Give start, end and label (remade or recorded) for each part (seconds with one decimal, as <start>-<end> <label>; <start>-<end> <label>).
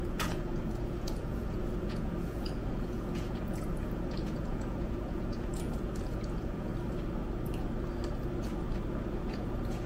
0.0-6.7 remade; 6.7-9.1 recorded; 9.1-9.9 remade